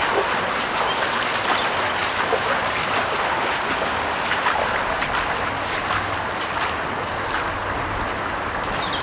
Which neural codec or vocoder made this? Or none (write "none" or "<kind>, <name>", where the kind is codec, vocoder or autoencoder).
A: none